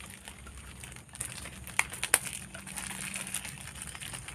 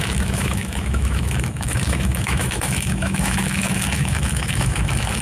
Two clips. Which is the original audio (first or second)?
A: first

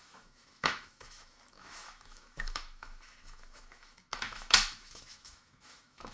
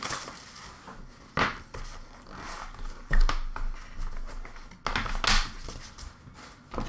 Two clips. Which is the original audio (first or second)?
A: second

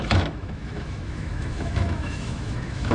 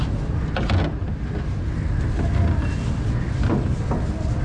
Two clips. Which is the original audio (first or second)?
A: second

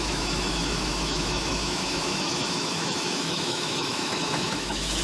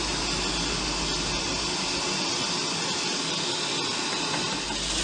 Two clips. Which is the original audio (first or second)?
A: second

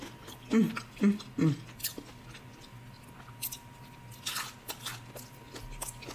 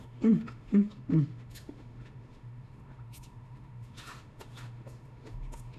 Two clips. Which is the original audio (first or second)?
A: first